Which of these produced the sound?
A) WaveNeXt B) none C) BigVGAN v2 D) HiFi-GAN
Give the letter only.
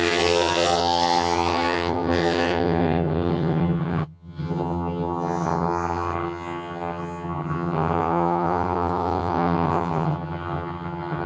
D